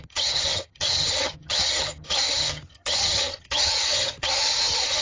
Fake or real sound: fake